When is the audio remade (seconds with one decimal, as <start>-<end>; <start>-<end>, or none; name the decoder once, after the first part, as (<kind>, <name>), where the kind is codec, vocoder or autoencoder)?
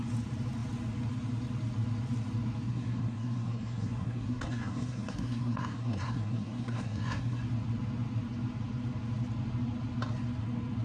2.7-7.4 (codec, SNAC)